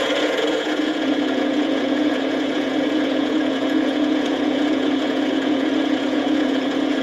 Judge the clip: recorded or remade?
remade